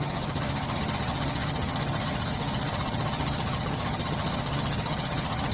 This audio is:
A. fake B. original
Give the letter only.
A